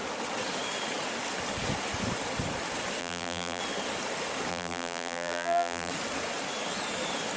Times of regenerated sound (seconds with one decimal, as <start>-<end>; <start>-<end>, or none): 3.0-3.6; 4.5-5.9